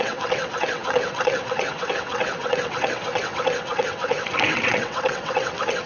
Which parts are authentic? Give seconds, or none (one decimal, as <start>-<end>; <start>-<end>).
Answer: none